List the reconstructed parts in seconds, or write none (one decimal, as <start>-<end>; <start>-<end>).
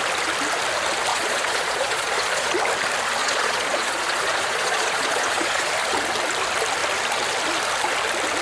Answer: 1.1-2.5; 3.2-5.7